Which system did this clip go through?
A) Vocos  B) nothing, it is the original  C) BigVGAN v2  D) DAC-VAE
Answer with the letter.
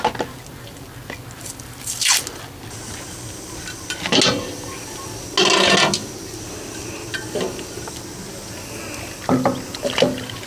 B